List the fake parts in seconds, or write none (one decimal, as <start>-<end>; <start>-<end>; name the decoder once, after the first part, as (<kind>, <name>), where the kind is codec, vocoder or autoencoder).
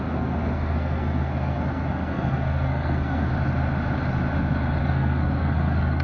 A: 0.0-3.3 (codec, SNAC); 4.8-6.0